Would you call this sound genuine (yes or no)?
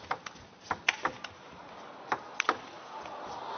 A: yes